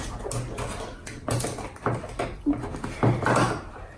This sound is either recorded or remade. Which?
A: recorded